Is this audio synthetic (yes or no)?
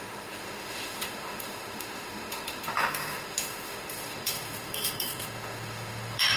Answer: yes